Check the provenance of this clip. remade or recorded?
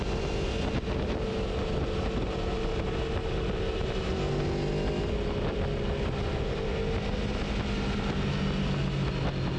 recorded